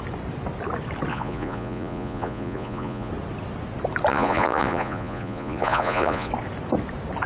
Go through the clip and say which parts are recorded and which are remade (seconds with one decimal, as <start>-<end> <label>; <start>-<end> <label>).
0.0-1.1 recorded; 1.1-3.1 remade; 3.1-4.1 recorded; 4.1-6.3 remade; 6.3-7.3 recorded